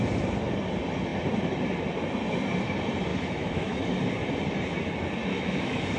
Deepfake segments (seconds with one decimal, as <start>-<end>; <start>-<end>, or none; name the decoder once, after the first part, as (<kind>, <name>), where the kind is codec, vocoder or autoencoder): 3.1-4.0 (autoencoder, DAC-VAE); 5.3-6.0